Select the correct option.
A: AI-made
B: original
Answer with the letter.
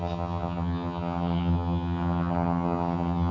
A